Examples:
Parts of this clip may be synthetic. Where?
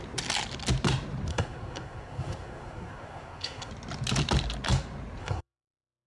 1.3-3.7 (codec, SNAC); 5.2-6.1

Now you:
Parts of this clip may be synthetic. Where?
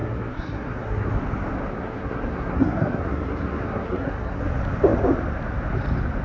0.0-1.1 (codec, SNAC); 1.7-4.4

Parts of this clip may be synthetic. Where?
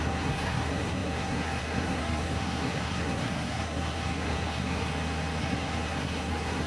0.0-4.9 (codec, SNAC); 5.4-6.7